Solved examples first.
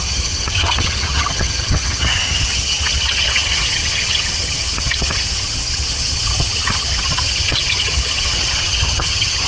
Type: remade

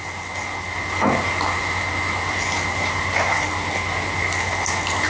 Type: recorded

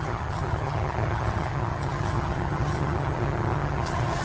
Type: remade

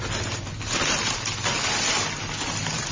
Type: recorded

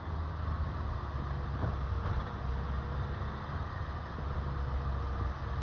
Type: recorded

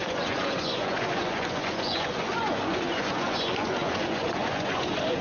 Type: remade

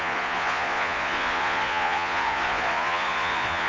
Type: remade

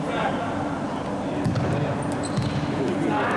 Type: recorded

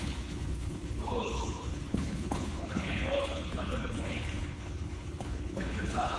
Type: remade